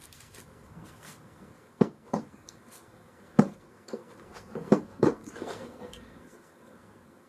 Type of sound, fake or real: fake